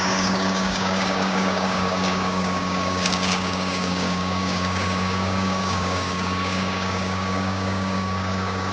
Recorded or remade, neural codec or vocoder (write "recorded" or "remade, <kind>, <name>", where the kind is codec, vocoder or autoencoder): remade, codec, DAC